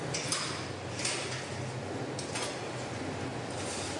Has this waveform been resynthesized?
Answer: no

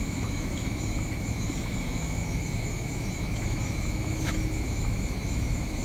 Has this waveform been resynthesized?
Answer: yes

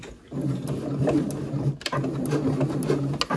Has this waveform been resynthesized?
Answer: no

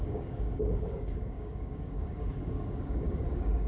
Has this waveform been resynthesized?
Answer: yes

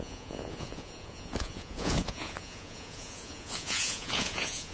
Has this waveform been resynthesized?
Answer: yes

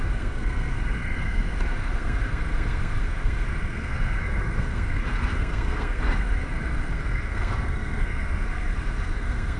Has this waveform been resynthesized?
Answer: yes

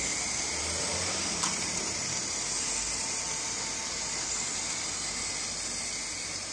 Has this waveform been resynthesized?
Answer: no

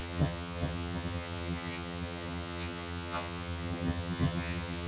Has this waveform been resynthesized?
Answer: yes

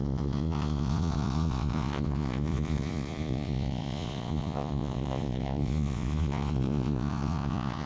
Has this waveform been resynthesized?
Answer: yes